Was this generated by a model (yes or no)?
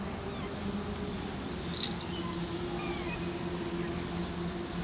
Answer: no